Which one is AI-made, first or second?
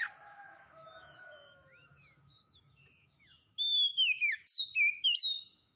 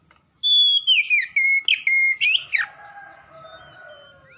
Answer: first